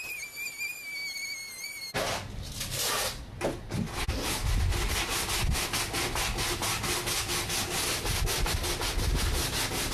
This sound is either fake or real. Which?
real